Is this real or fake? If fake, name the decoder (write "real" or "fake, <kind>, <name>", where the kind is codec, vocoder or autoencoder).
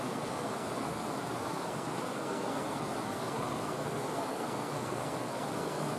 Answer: fake, codec, SNAC